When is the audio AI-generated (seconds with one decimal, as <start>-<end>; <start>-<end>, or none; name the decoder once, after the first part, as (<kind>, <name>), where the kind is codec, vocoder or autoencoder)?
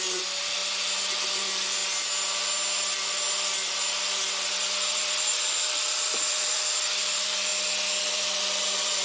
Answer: 0.0-0.6 (vocoder, BigVGAN v2); 1.3-1.8; 4.9-7.5; 8.0-9.0